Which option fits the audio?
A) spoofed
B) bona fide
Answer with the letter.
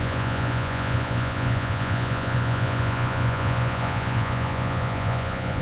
A